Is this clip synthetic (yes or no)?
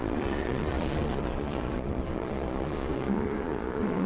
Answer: yes